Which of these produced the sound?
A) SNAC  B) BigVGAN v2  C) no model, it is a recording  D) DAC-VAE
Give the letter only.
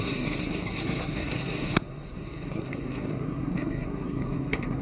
A